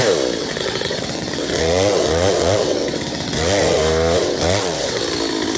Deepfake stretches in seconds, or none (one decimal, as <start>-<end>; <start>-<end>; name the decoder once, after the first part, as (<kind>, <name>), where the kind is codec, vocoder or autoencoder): 0.4-3.8 (vocoder, WaveNeXt); 4.2-5.0